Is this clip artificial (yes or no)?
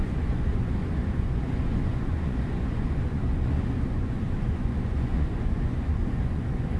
yes